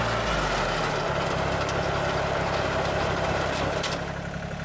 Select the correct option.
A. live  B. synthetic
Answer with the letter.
A